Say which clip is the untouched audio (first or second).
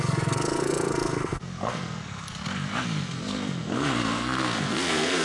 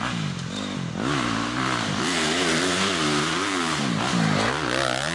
second